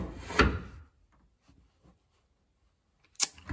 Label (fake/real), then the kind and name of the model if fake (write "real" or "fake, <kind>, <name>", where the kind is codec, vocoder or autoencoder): real